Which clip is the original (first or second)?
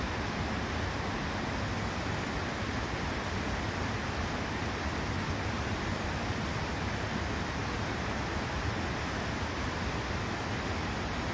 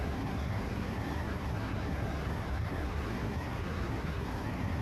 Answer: first